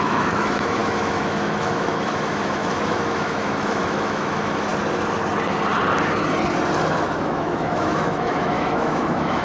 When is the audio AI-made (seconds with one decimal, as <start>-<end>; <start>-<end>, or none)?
0.0-4.7; 6.9-9.4

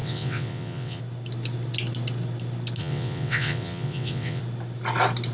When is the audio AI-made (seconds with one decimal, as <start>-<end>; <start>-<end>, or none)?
0.0-1.0; 2.8-4.4

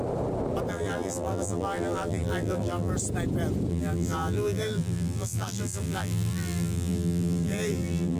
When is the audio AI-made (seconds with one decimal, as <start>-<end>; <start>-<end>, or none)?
0.7-2.9; 3.7-8.2

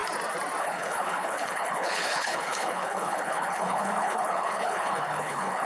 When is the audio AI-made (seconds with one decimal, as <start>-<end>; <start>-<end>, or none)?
0.6-5.7